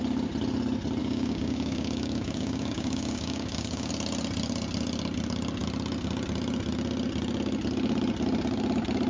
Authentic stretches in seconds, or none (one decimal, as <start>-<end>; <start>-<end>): 0.0-1.0; 3.9-9.1